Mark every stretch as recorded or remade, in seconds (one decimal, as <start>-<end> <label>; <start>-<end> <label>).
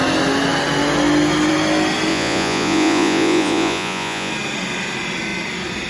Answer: 0.0-2.1 recorded; 2.1-4.3 remade; 4.3-5.9 recorded